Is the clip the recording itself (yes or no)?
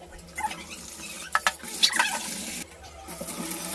yes